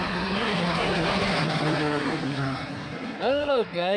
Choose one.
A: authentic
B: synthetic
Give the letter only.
B